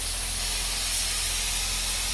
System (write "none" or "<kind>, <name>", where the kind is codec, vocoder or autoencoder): none